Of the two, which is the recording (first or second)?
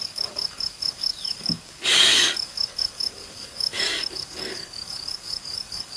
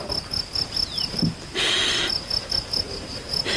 second